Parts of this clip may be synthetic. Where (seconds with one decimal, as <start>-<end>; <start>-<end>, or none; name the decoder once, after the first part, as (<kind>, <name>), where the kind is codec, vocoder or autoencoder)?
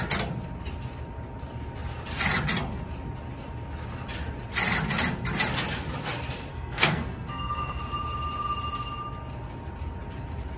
6.5-7.8 (codec, SNAC)